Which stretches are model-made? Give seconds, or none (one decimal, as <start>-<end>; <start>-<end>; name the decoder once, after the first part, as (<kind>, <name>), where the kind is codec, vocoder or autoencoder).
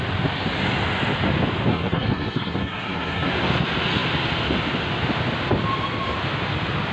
1.7-3.3 (codec, SNAC)